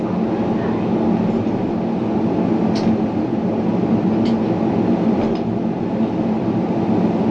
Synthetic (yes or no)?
no